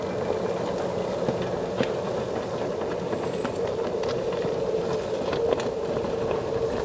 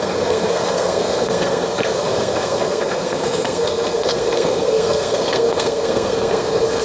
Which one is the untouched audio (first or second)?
first